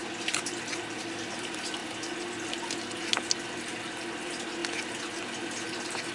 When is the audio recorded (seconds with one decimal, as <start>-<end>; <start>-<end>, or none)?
0.0-6.1